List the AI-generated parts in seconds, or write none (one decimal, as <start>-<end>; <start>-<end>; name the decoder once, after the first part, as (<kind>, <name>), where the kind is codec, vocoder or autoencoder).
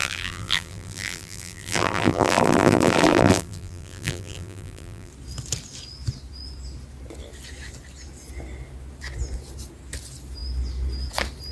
0.0-5.1 (vocoder, BigVGAN v2)